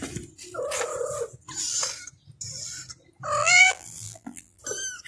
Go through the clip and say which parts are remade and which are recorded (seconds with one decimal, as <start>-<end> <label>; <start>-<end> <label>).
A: 0.0-3.4 recorded; 3.4-4.6 remade; 4.6-5.1 recorded